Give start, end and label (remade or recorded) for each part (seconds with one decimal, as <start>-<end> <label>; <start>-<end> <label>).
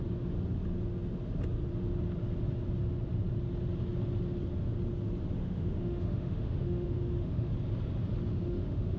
0.0-5.4 recorded; 5.4-7.5 remade; 7.5-8.3 recorded; 8.3-9.0 remade